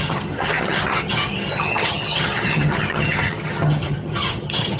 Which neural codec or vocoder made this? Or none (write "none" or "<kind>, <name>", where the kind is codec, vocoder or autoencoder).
vocoder, HiFi-GAN